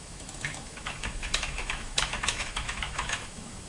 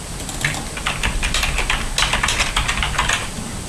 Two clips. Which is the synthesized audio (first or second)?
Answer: first